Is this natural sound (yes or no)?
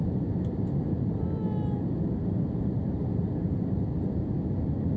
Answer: yes